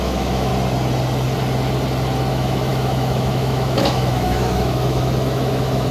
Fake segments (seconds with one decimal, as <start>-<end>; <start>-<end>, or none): 0.0-0.5; 2.3-5.9